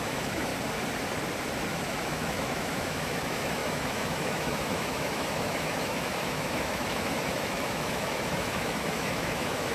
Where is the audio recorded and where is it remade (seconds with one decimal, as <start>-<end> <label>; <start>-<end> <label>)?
0.0-0.5 remade; 0.5-1.7 recorded; 1.7-9.7 remade